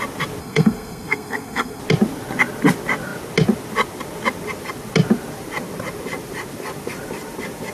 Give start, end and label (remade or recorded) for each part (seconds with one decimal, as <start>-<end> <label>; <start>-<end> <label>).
0.0-0.4 recorded; 0.4-1.8 remade; 1.8-7.7 recorded